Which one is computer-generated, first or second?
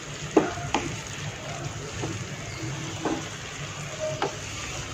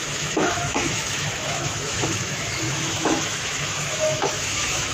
second